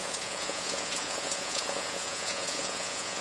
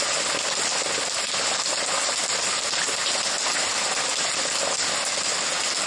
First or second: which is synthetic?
first